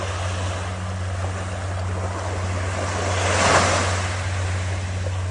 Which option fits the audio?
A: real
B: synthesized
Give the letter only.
A